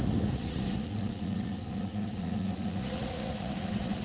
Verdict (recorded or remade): remade